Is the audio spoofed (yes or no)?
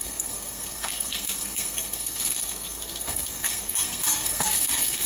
yes